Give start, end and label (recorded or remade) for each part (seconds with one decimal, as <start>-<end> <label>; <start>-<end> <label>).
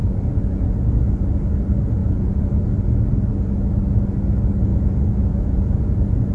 0.0-1.3 remade; 1.3-2.0 recorded; 2.0-2.7 remade; 2.7-4.7 recorded; 4.7-6.3 remade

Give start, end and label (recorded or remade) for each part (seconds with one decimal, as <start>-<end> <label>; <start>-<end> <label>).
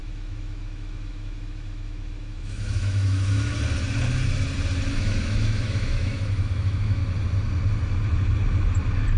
0.0-3.5 remade; 3.5-4.9 recorded; 4.9-7.0 remade; 7.0-9.2 recorded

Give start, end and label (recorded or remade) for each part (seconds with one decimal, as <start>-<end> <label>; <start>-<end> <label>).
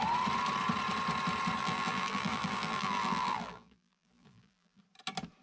0.0-1.6 recorded; 1.6-4.8 remade; 4.8-5.4 recorded